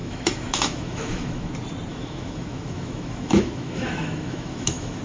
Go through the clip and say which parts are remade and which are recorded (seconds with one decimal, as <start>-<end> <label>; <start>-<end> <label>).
0.0-1.5 remade; 1.5-1.9 recorded; 1.9-5.0 remade